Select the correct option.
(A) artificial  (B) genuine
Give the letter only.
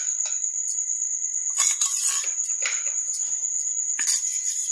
B